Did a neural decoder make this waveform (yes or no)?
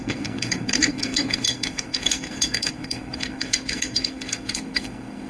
yes